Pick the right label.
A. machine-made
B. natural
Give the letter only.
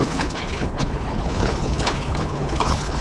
A